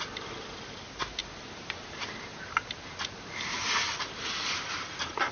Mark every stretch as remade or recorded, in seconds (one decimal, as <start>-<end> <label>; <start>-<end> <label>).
0.0-1.2 recorded; 1.2-2.2 remade; 2.2-5.3 recorded